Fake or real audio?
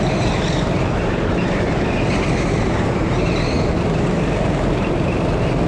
fake